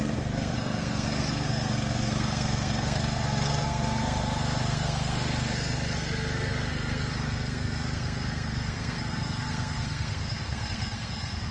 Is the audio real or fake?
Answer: fake